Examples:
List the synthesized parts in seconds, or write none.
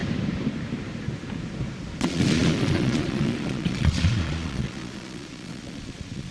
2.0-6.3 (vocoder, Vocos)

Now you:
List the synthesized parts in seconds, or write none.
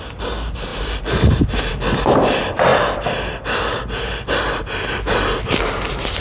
none